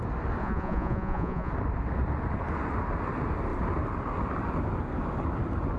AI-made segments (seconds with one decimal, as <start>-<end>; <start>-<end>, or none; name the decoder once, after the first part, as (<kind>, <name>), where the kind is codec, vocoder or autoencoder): 0.4-1.5 (vocoder, Vocos)